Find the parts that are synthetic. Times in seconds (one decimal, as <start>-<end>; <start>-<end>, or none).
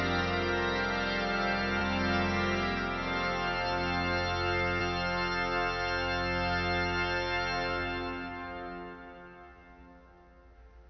none